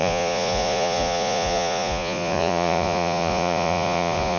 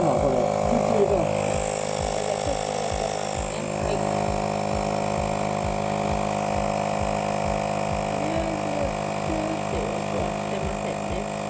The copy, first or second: first